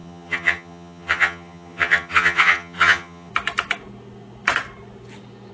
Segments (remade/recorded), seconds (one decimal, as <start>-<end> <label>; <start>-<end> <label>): 0.0-3.3 remade; 3.3-5.5 recorded